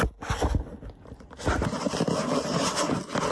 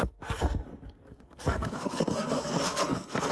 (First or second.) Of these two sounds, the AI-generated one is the second